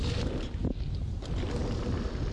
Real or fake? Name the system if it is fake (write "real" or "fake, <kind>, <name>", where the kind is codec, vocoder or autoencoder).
real